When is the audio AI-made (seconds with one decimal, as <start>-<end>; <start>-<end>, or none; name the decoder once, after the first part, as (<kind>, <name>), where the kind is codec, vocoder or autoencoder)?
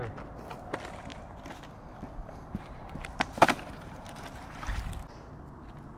1.1-1.7 (vocoder, BigVGAN v2); 2.2-4.9